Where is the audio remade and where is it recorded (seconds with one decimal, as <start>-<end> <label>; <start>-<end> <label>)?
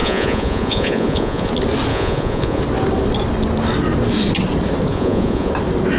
0.0-1.5 remade; 1.5-1.9 recorded; 1.9-2.6 remade; 2.6-4.9 recorded; 4.9-5.5 remade; 5.5-6.0 recorded